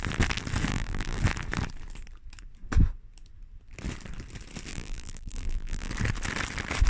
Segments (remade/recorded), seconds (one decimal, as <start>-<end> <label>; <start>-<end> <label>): 0.0-0.7 recorded; 0.7-1.2 remade; 1.2-4.7 recorded; 4.7-5.9 remade; 5.9-6.9 recorded